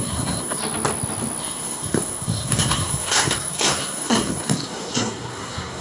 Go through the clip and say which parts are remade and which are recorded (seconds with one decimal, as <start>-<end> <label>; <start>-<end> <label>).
0.0-0.6 remade; 0.6-1.4 recorded; 1.4-5.8 remade